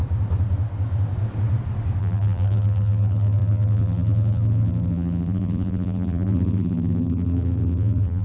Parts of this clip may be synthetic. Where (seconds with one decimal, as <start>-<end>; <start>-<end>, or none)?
2.0-8.2